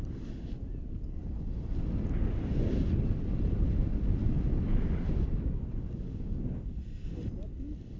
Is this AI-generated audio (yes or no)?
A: no